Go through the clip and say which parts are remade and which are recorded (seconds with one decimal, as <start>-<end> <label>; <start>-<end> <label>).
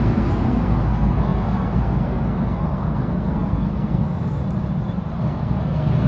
0.0-4.4 remade; 4.4-5.2 recorded; 5.2-6.1 remade